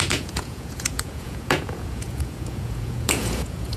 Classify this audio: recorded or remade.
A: remade